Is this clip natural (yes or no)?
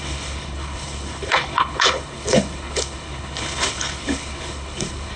no